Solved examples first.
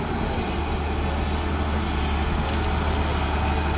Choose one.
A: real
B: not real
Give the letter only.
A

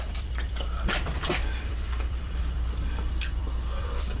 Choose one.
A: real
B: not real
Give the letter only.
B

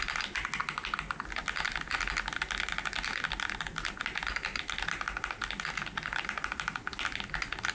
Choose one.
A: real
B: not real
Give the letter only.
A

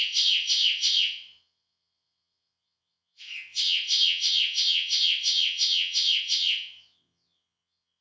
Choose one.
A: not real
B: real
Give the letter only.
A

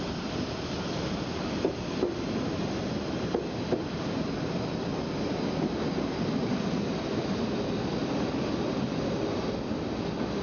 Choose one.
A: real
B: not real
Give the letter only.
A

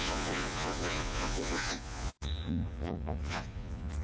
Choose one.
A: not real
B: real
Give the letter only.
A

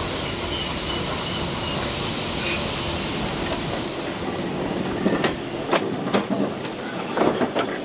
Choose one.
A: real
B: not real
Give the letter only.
A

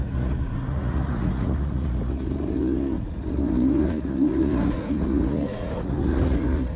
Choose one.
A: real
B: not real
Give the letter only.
B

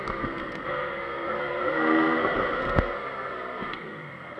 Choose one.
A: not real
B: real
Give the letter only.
A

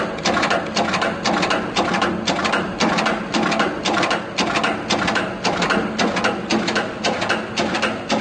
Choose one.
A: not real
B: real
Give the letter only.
B